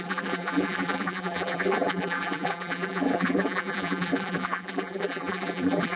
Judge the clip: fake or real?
fake